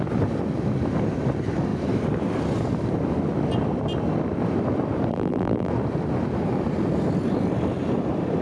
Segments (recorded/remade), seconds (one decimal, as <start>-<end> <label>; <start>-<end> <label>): 0.0-5.1 recorded; 5.1-5.7 remade; 5.7-8.4 recorded